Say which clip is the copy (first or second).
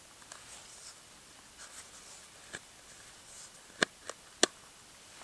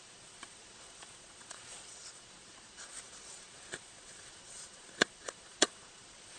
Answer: second